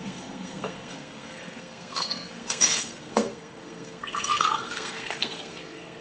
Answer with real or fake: fake